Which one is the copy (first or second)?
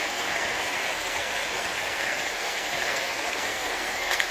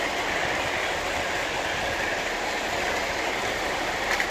first